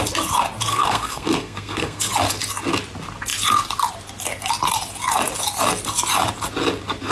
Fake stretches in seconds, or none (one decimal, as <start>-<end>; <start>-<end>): 0.7-2.1